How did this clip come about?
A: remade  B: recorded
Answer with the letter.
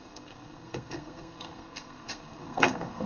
A